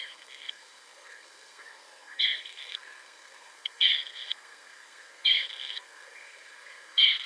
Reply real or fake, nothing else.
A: fake